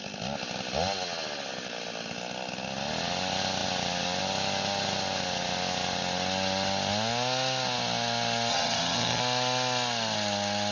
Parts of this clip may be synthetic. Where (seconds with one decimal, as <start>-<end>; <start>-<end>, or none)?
8.5-9.2